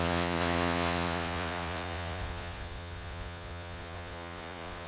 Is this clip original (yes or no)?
no